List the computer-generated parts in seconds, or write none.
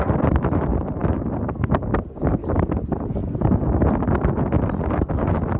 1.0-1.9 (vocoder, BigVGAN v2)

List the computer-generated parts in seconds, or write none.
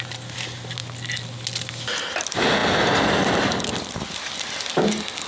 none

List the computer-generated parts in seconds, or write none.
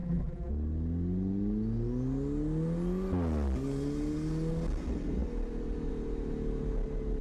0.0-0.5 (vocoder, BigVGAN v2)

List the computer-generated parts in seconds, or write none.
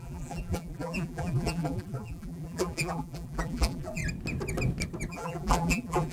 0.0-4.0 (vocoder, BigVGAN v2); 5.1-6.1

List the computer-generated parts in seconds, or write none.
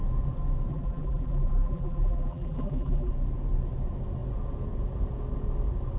0.7-3.1 (vocoder, BigVGAN v2)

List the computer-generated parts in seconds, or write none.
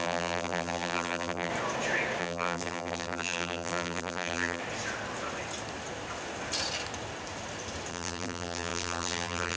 0.0-1.5 (vocoder, BigVGAN v2); 2.2-4.6; 7.9-9.6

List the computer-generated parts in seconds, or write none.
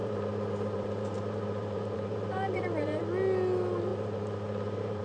0.0-3.0 (vocoder, BigVGAN v2); 3.9-5.0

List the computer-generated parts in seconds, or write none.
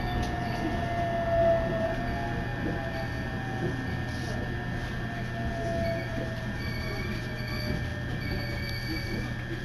6.1-7.2 (vocoder, BigVGAN v2)